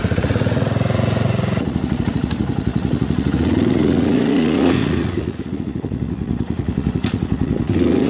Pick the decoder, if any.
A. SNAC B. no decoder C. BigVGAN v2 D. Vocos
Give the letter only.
D